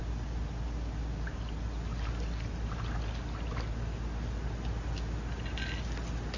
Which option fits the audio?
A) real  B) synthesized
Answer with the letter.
A